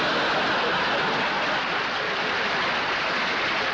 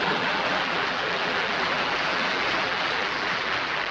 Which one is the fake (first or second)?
second